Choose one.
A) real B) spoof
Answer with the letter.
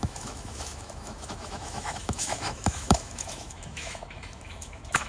B